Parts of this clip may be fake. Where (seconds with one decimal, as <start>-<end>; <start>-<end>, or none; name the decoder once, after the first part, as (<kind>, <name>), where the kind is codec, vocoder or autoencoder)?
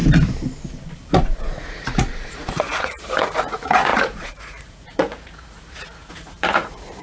1.1-7.0 (vocoder, Vocos)